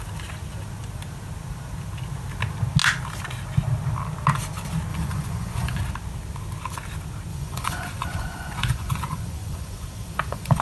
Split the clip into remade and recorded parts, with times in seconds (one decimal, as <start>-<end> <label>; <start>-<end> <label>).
0.0-4.9 recorded; 4.9-5.8 remade; 5.8-7.3 recorded; 7.3-10.6 remade